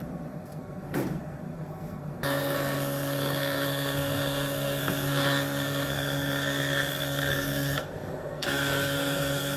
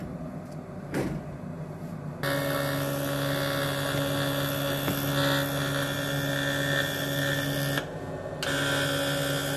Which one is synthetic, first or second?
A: first